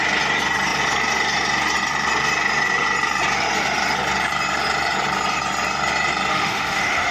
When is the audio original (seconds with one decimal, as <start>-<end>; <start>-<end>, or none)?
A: 0.0-6.3